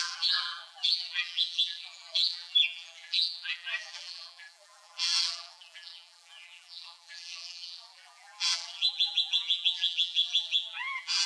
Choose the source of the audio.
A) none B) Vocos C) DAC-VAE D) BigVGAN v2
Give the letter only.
D